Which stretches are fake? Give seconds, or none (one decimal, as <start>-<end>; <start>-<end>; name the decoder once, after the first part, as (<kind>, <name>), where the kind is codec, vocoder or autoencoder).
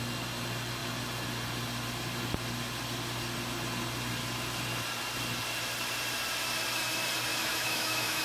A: 7.3-8.2 (autoencoder, DAC-VAE)